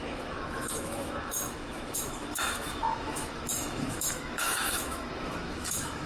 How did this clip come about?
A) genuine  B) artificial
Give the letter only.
B